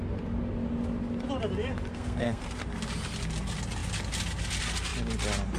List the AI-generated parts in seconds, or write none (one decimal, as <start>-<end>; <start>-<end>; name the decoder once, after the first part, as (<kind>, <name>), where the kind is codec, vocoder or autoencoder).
1.9-2.4 (codec, SNAC)